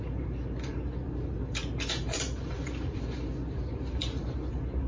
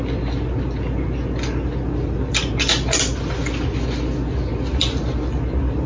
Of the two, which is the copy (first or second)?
first